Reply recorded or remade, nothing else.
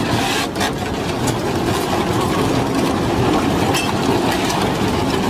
recorded